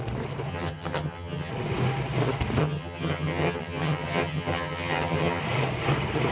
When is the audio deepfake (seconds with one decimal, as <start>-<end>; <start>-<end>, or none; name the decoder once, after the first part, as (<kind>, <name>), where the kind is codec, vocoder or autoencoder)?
0.5-1.5 (vocoder, HiFi-GAN); 2.6-5.4